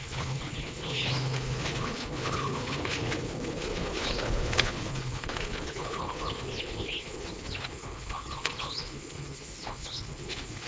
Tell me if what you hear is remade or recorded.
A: remade